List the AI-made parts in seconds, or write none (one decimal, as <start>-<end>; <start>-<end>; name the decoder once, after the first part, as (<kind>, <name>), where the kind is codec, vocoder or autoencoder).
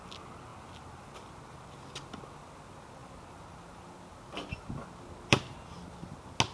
none